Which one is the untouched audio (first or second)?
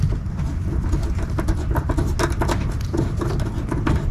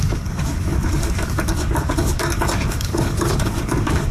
first